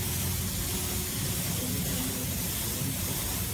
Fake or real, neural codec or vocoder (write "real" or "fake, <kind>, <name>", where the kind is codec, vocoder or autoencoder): real